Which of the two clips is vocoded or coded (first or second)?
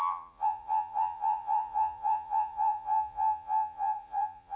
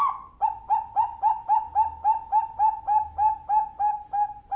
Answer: first